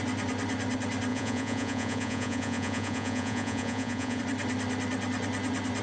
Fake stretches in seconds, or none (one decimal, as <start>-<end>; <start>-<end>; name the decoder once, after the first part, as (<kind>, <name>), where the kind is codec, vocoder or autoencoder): 1.1-4.2 (vocoder, Vocos)